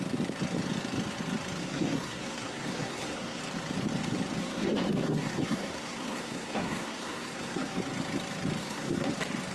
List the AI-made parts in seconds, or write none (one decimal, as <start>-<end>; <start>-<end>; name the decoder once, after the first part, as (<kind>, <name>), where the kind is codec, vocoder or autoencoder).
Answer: 1.6-3.4 (codec, SNAC); 4.4-7.7; 8.6-9.1

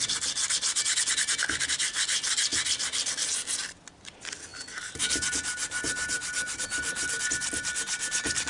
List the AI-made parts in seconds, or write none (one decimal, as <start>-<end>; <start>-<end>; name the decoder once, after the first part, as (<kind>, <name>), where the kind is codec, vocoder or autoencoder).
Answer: none

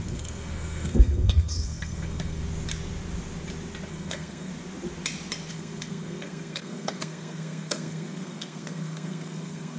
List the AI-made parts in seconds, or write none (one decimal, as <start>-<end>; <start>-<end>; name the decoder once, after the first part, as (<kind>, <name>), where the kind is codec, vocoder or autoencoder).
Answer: 0.0-2.4 (codec, SNAC); 3.9-4.5; 5.5-9.8

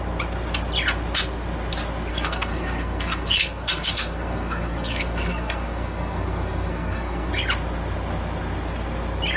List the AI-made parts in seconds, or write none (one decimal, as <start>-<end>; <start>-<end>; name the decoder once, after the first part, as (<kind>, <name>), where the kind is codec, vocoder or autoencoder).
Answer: 2.1-7.3 (codec, SNAC)

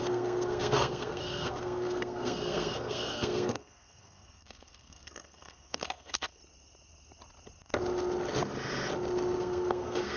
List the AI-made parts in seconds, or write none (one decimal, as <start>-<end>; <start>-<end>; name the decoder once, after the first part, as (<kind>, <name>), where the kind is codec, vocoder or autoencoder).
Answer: 0.0-6.4 (codec, SNAC); 9.4-10.2

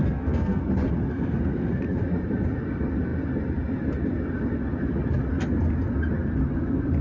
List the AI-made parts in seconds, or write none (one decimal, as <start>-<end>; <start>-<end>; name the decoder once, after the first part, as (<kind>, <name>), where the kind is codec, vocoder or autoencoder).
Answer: 0.0-0.6 (codec, SNAC); 1.1-1.8

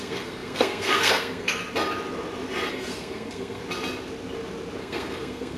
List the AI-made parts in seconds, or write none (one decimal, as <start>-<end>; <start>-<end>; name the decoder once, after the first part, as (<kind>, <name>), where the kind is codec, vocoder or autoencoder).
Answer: 0.0-1.6 (codec, SNAC); 2.7-3.6; 4.8-5.6